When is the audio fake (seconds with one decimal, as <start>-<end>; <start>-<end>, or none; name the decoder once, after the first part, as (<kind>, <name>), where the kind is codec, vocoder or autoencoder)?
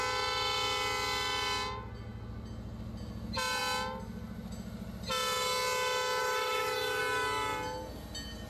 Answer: 6.2-7.0 (autoencoder, DAC-VAE)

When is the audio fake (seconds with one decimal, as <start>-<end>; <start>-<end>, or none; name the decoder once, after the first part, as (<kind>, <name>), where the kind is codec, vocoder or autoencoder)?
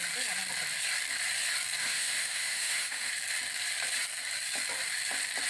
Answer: 1.8-3.1 (autoencoder, DAC-VAE)